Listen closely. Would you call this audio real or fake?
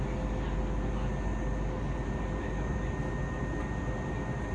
real